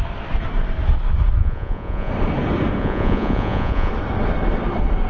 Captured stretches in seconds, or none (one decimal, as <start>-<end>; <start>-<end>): 0.0-1.4; 2.1-2.8; 3.9-5.1